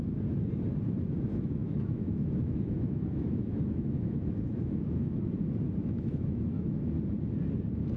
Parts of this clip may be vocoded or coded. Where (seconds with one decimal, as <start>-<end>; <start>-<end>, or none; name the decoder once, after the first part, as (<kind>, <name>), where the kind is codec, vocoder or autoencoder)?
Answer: 1.3-5.2 (autoencoder, DAC-VAE); 5.8-6.8